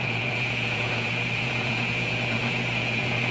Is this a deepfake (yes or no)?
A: yes